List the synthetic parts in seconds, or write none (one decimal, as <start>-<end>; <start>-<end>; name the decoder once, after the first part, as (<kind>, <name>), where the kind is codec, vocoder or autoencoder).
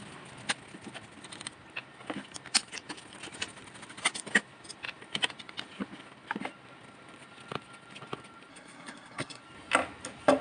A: 8.5-9.4 (codec, SNAC)